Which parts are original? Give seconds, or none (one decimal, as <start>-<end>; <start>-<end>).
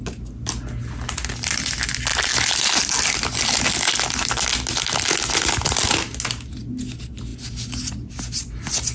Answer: 0.0-8.9